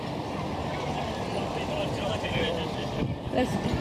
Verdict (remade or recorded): remade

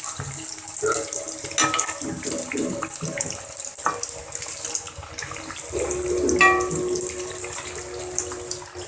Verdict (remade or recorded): recorded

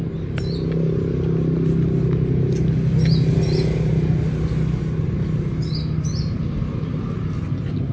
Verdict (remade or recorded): recorded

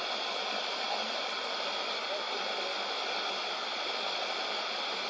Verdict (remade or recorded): recorded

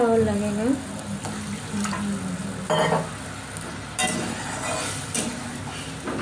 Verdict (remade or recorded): recorded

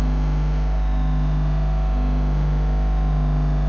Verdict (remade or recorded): remade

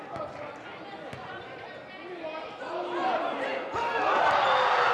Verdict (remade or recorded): recorded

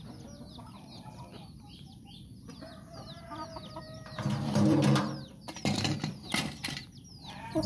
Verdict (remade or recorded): remade